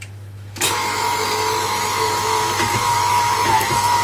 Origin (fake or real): fake